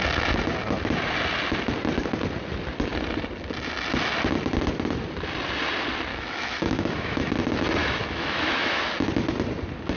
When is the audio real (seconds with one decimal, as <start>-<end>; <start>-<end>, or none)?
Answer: 0.0-6.1; 7.3-7.8; 8.8-10.0